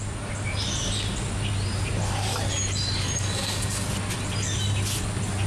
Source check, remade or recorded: recorded